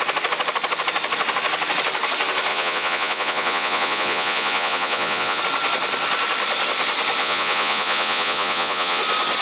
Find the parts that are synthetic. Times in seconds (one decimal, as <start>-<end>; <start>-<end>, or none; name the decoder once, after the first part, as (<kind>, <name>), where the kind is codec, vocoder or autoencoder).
2.5-5.4 (vocoder, Vocos); 7.2-9.0